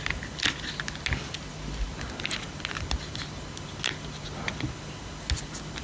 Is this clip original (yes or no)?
yes